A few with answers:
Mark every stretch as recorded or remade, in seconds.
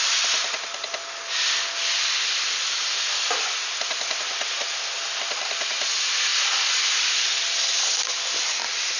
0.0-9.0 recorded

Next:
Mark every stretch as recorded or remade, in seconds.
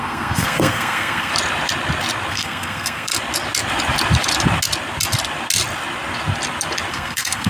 0.0-1.3 remade; 1.3-2.3 recorded; 2.3-3.1 remade; 3.1-6.9 recorded; 6.9-7.5 remade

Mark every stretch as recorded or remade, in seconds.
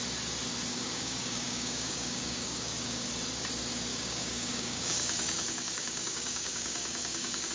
0.0-0.7 recorded; 0.7-3.1 remade; 3.1-3.9 recorded; 3.9-7.5 remade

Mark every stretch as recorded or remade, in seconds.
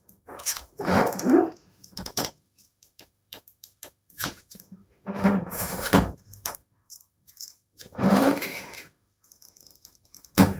0.0-10.6 remade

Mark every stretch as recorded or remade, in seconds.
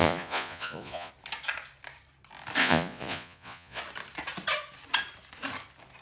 0.0-1.1 remade; 1.1-2.6 recorded; 2.6-3.8 remade; 3.8-6.0 recorded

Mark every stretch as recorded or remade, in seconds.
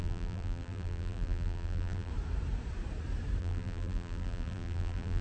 0.0-2.1 remade; 2.1-3.4 recorded; 3.4-5.2 remade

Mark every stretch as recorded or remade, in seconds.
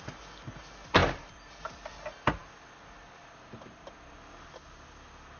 0.0-5.4 recorded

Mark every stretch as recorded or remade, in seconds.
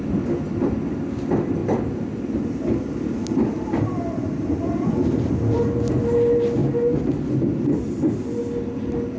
0.0-9.2 recorded